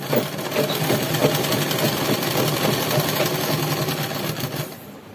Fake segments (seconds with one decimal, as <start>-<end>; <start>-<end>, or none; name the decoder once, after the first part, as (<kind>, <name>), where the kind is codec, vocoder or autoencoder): none

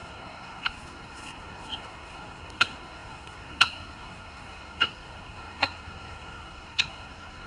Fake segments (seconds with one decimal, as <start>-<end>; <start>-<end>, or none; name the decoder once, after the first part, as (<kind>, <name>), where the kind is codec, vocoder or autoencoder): 0.0-7.5 (codec, SNAC)

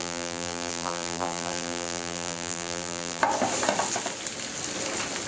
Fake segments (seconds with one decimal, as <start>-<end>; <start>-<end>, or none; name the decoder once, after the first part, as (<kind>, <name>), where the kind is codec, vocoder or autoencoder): 0.0-3.2 (vocoder, BigVGAN v2)